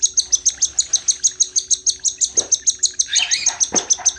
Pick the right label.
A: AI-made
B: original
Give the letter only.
B